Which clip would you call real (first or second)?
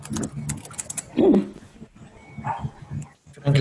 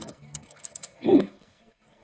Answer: first